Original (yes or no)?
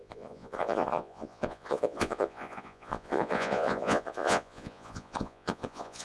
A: no